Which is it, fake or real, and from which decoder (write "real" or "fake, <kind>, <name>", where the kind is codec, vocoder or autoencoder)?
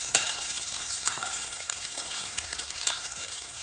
fake, codec, SNAC